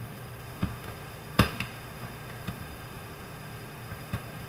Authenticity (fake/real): fake